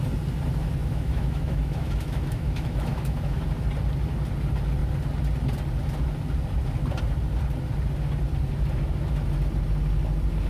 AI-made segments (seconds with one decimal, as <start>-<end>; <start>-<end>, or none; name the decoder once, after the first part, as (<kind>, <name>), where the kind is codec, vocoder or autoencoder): 0.8-3.4 (autoencoder, DAC-VAE)